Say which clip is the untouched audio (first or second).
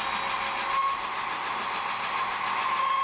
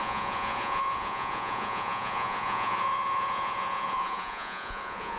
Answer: first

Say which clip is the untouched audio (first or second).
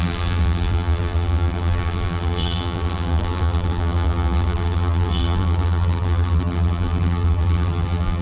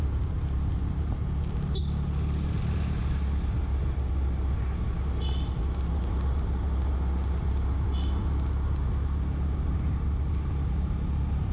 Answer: second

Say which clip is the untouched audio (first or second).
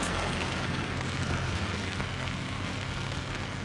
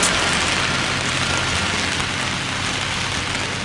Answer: second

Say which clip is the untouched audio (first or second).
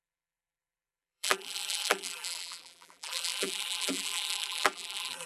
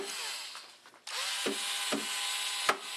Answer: second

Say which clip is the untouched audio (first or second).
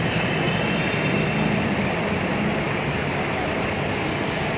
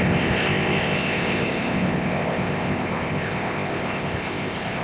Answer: first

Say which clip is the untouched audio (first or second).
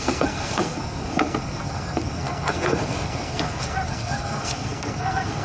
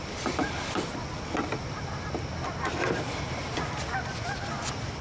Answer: second